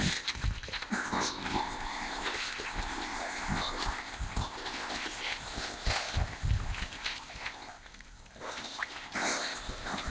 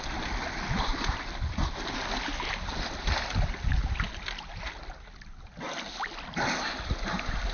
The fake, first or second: first